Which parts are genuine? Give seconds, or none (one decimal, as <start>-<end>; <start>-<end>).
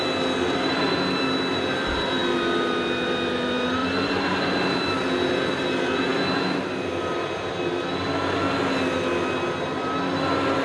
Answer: 0.0-3.8; 5.1-6.1; 7.6-10.6